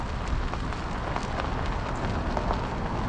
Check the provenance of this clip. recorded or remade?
recorded